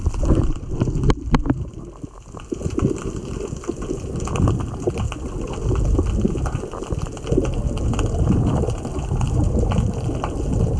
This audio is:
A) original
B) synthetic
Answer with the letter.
A